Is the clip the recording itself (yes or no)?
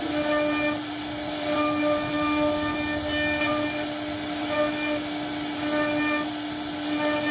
yes